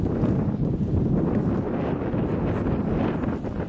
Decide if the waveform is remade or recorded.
recorded